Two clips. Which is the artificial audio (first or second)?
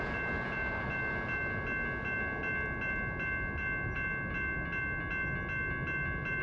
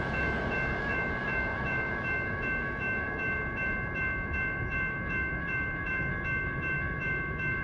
second